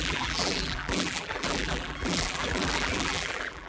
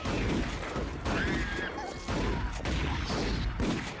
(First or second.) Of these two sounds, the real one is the second